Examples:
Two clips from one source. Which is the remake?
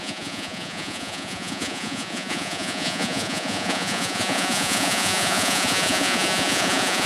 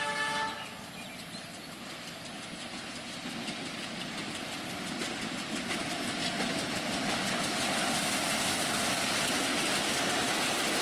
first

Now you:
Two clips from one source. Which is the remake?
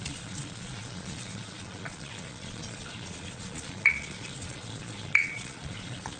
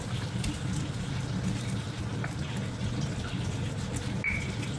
first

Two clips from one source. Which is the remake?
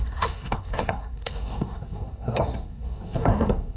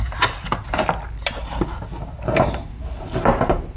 first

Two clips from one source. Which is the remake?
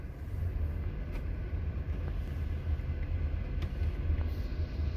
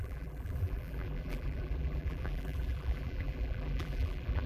second